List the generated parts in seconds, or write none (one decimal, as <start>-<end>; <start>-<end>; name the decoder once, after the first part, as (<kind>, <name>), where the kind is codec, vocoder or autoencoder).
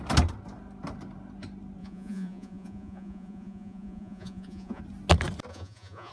1.8-4.8 (vocoder, Vocos); 5.5-6.1